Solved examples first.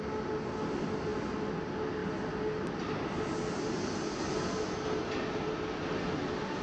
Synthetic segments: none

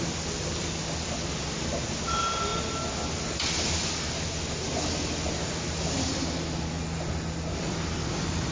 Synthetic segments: none